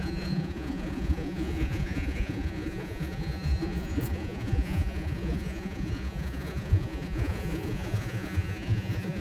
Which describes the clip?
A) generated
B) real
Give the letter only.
A